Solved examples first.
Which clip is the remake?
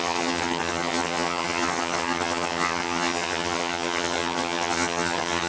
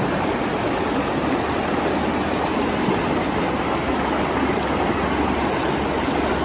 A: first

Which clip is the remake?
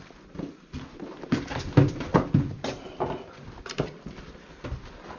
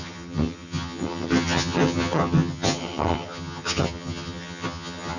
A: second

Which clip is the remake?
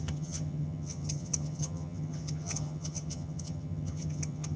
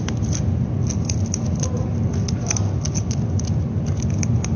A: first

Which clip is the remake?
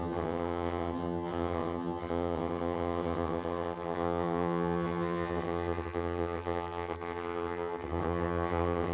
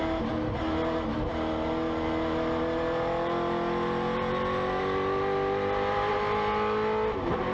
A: first